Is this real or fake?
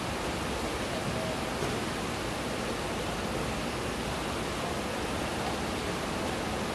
real